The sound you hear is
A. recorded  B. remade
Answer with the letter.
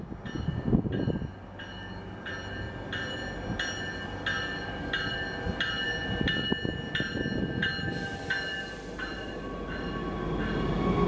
A